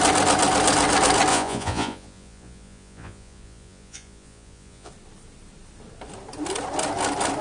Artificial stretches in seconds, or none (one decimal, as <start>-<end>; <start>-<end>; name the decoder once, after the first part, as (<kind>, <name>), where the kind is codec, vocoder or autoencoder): 1.3-4.9 (vocoder, Vocos)